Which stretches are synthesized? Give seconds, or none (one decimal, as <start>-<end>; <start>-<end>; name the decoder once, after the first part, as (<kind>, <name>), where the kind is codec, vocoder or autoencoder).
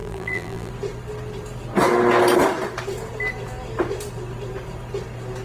0.0-0.7 (vocoder, BigVGAN v2)